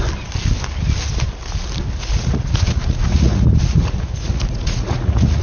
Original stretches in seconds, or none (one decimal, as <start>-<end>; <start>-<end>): 0.0-2.0